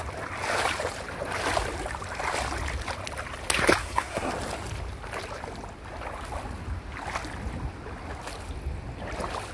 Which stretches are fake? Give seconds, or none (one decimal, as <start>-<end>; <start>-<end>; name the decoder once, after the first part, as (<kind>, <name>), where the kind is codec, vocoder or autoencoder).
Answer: 3.8-4.3 (codec, SNAC)